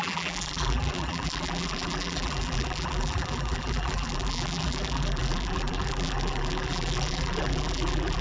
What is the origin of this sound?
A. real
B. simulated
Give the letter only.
B